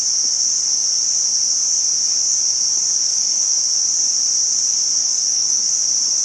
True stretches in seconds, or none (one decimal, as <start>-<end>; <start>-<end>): 0.0-3.1; 3.6-5.0; 5.7-6.2